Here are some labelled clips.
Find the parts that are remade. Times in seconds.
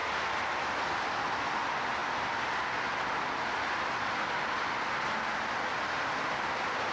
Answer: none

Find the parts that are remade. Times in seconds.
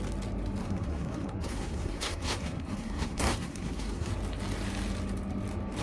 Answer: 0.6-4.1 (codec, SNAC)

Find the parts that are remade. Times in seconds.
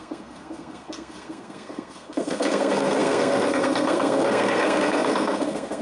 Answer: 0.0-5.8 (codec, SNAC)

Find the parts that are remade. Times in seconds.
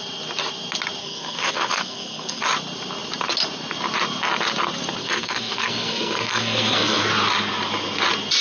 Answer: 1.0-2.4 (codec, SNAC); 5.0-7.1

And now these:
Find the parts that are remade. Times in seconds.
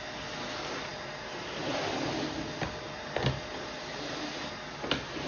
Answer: none